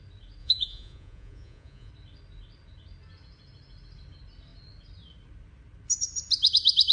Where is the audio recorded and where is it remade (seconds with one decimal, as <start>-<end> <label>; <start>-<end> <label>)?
0.0-0.4 recorded; 0.4-1.9 remade; 1.9-6.9 recorded